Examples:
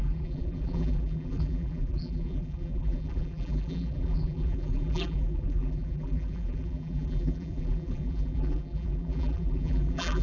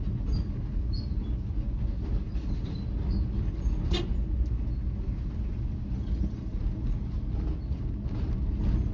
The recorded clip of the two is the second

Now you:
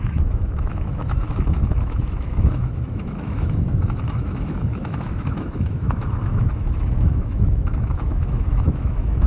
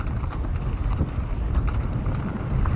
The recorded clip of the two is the second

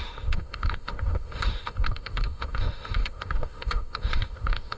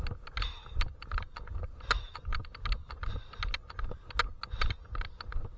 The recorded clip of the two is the second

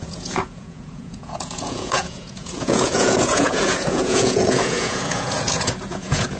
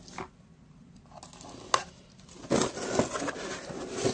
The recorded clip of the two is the second